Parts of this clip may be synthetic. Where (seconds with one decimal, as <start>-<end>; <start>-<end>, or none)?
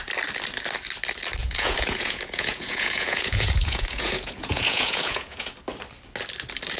1.4-5.5